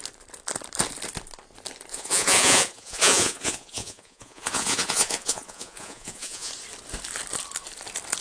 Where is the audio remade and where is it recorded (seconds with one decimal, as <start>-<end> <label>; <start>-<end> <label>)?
0.0-1.9 recorded; 1.9-6.5 remade; 6.5-8.2 recorded